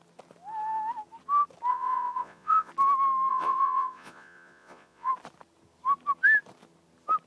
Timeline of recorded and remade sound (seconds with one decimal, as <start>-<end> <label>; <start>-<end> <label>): 0.0-1.7 recorded; 1.7-2.7 remade; 2.7-3.3 recorded; 3.3-5.1 remade; 5.1-7.3 recorded

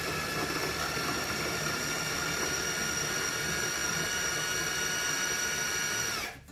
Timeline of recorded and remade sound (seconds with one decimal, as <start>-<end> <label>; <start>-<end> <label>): 0.0-6.5 recorded

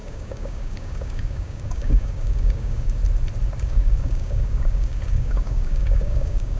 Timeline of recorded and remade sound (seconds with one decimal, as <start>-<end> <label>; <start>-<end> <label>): 0.0-3.0 remade; 3.0-3.6 recorded; 3.6-6.6 remade